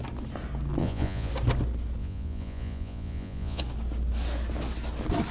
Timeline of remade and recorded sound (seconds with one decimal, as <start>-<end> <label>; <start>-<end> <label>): 0.0-0.8 recorded; 0.8-1.3 remade; 1.3-2.0 recorded; 2.0-3.6 remade; 3.6-5.3 recorded